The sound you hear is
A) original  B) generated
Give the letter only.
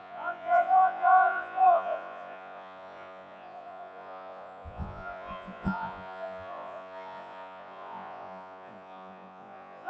B